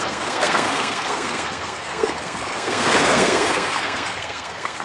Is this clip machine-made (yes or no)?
yes